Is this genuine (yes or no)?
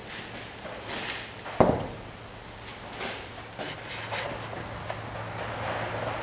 yes